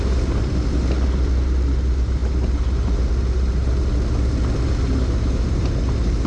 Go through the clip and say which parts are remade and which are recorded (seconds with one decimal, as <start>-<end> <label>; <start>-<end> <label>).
0.0-6.3 recorded